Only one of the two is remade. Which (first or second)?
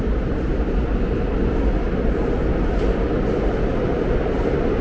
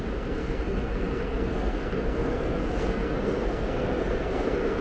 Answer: second